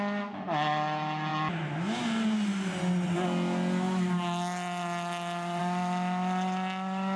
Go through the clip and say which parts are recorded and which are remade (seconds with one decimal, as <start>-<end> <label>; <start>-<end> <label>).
0.0-7.2 recorded